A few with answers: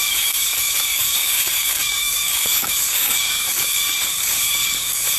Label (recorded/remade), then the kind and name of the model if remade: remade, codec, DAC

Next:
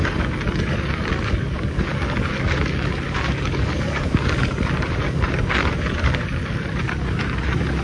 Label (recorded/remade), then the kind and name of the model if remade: remade, codec, DAC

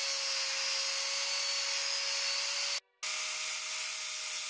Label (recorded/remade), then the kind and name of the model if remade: recorded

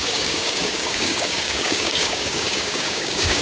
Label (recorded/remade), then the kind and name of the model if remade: remade, codec, DAC